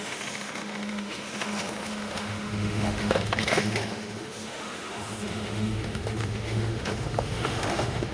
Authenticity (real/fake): fake